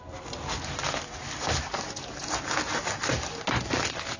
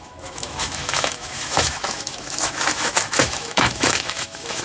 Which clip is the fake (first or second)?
second